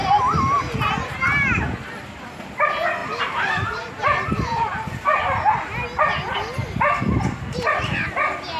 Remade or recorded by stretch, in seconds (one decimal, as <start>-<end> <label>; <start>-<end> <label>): 0.0-3.0 recorded; 3.0-5.2 remade; 5.2-6.6 recorded; 6.6-7.3 remade; 7.3-8.6 recorded